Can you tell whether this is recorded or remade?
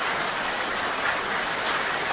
recorded